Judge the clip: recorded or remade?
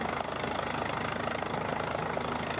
recorded